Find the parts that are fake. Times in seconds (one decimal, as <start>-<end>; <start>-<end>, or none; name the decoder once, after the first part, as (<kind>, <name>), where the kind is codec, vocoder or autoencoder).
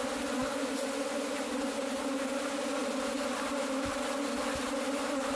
none